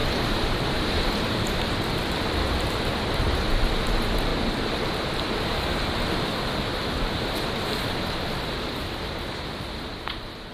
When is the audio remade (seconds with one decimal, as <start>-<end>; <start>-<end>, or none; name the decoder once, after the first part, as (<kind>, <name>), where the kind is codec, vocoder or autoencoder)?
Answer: 0.0-3.0 (vocoder, BigVGAN v2); 6.8-10.0